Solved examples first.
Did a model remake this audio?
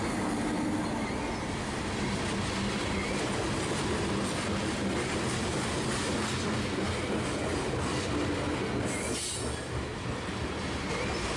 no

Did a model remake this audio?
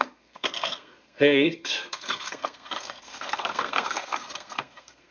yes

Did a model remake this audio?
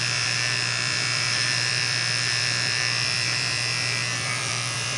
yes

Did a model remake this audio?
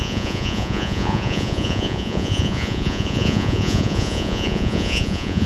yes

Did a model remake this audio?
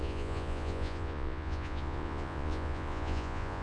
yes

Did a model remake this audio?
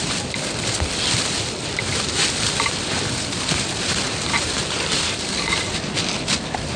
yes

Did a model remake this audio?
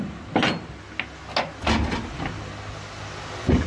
no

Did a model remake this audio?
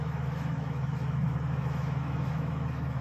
yes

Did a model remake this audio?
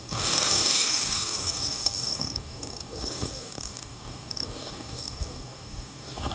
yes